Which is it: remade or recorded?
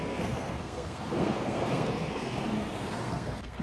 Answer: remade